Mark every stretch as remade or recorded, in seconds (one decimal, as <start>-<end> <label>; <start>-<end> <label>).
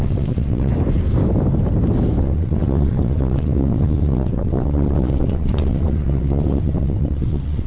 0.0-0.7 remade; 0.7-2.2 recorded; 2.2-7.7 remade